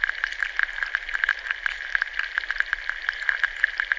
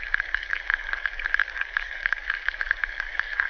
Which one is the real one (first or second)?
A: first